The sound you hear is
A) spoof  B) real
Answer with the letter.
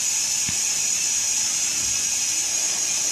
B